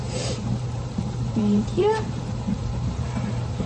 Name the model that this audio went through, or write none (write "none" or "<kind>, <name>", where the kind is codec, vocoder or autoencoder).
vocoder, BigVGAN v2